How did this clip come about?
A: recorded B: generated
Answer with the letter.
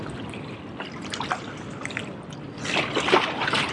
A